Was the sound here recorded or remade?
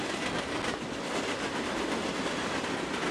recorded